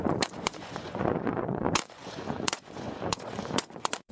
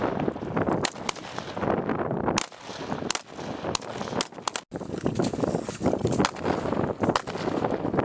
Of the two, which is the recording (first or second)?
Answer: second